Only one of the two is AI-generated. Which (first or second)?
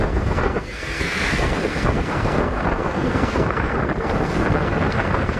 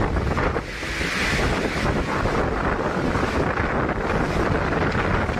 first